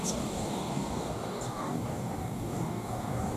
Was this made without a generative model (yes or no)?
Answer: no